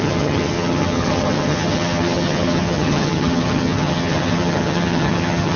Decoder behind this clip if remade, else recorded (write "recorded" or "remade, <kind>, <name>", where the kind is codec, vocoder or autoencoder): remade, vocoder, HiFi-GAN